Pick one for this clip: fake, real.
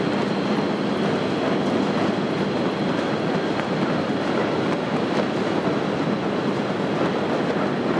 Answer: real